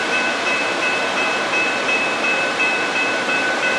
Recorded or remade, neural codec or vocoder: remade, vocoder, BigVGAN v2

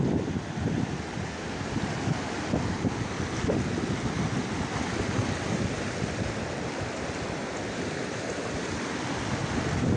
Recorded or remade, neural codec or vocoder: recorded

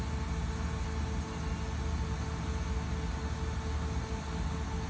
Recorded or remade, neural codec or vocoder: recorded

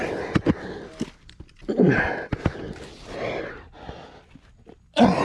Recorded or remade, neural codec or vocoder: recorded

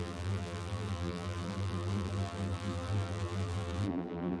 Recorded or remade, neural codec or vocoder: remade, vocoder, BigVGAN v2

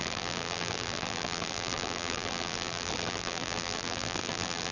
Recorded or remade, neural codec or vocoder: remade, vocoder, BigVGAN v2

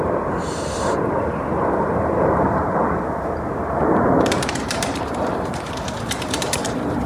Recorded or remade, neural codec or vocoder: remade, vocoder, BigVGAN v2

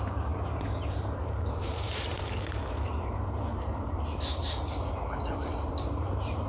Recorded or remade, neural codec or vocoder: remade, vocoder, BigVGAN v2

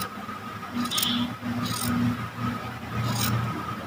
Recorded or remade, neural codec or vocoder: recorded